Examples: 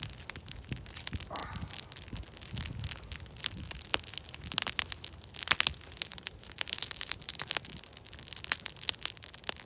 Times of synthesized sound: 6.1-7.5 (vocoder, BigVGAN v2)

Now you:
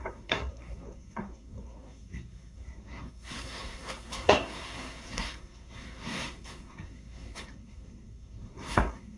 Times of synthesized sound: 0.0-9.2 (codec, SNAC)

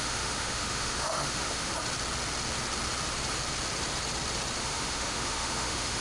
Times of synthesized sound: 0.0-1.7 (autoencoder, DAC-VAE); 4.6-6.0

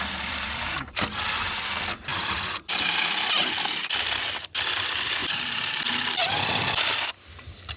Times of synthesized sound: 0.0-7.8 (vocoder, BigVGAN v2)

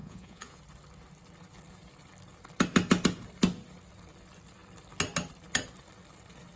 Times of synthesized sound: 0.0-0.6 (vocoder, Vocos)

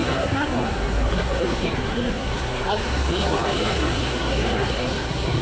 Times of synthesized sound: 0.0-5.4 (codec, SNAC)

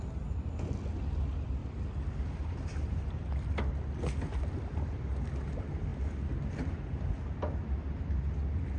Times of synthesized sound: 1.6-3.6 (vocoder, BigVGAN v2)

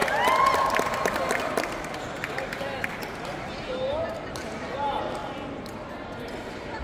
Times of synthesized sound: none